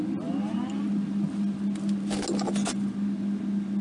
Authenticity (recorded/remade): recorded